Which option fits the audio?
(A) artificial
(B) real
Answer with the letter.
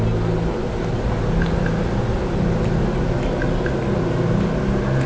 B